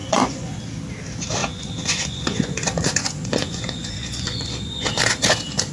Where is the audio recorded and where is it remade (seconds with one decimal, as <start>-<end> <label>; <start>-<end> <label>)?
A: 0.0-0.5 remade; 0.5-1.4 recorded; 1.4-4.8 remade; 4.8-5.7 recorded

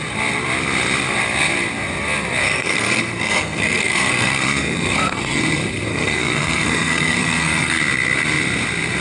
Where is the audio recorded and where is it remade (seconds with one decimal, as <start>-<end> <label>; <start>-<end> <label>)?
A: 0.0-2.4 recorded; 2.4-5.4 remade; 5.4-5.9 recorded; 5.9-7.8 remade; 7.8-9.0 recorded

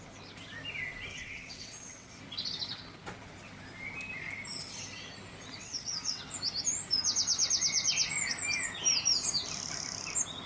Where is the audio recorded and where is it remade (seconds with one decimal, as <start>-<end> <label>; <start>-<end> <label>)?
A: 0.0-1.1 recorded; 1.1-2.2 remade; 2.2-5.6 recorded; 5.6-6.2 remade; 6.2-10.5 recorded